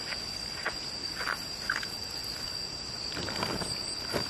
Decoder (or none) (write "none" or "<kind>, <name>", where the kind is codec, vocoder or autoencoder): none